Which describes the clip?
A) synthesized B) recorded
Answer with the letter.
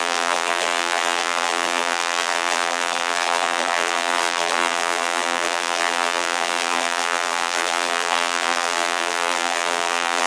A